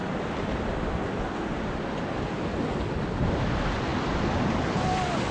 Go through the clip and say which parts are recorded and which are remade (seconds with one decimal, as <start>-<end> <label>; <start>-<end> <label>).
0.0-5.3 recorded